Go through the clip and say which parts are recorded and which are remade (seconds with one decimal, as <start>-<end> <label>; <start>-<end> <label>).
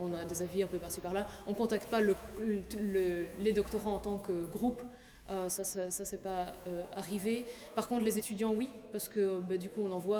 0.0-10.2 remade